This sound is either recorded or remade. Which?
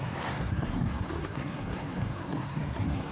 remade